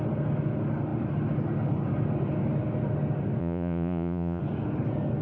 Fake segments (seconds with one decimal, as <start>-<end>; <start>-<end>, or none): 3.4-4.4